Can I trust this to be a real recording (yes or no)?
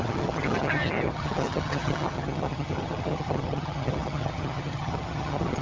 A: no